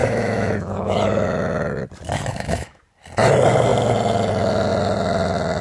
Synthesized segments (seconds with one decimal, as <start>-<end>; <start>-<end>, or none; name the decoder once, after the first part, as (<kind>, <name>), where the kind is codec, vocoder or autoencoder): 0.0-1.0 (autoencoder, DAC-VAE); 2.3-2.8